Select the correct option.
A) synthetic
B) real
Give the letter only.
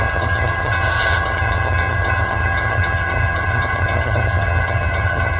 A